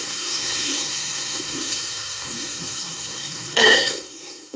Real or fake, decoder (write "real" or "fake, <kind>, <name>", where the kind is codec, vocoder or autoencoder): fake, codec, SNAC